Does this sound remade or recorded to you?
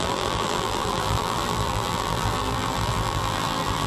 remade